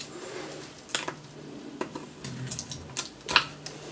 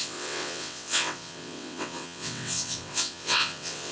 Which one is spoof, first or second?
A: second